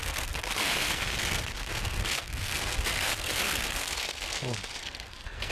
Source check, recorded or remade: remade